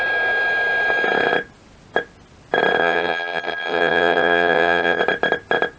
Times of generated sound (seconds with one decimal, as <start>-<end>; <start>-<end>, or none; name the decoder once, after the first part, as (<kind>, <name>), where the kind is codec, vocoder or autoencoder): 2.8-5.0 (vocoder, HiFi-GAN)